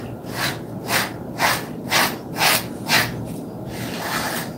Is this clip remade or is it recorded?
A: recorded